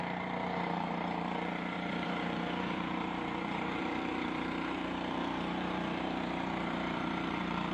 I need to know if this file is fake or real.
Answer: fake